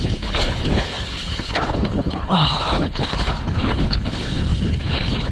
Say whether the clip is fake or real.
fake